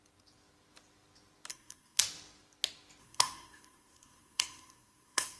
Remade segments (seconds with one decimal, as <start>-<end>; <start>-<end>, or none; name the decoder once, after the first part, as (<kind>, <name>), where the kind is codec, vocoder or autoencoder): 1.5-2.0 (codec, SNAC); 3.0-5.4